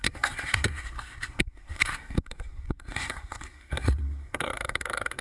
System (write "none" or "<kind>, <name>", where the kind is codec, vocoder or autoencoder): codec, SNAC